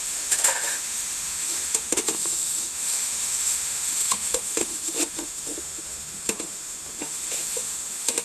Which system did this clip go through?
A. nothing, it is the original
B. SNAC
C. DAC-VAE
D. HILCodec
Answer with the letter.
C